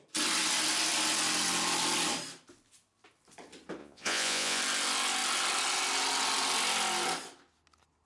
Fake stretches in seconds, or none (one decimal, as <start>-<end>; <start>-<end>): 3.8-4.6